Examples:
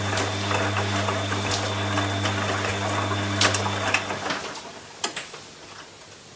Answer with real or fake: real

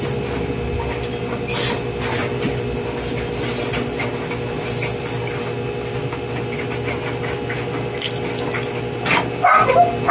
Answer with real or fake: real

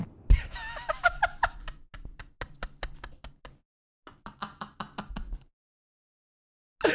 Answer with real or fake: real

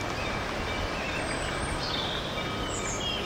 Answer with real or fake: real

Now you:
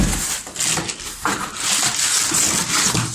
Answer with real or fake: real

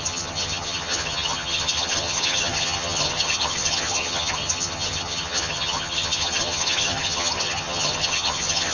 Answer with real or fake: fake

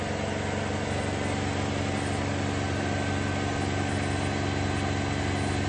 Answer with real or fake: real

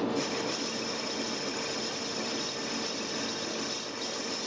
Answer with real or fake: real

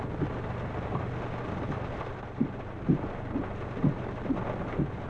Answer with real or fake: real